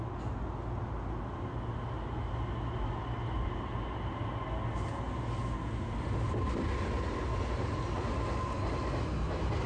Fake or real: real